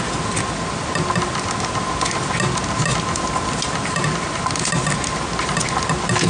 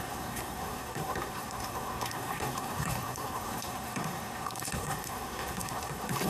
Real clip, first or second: first